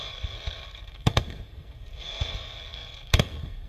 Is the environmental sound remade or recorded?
remade